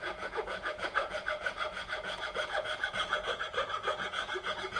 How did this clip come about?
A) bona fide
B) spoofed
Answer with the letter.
B